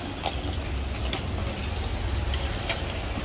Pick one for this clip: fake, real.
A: real